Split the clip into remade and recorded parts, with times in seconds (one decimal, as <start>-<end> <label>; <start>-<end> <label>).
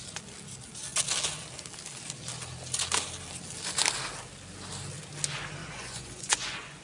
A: 0.0-5.6 recorded; 5.6-6.8 remade